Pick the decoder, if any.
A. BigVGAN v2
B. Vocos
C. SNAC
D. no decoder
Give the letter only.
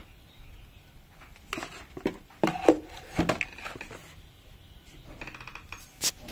D